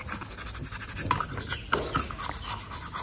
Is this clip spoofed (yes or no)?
no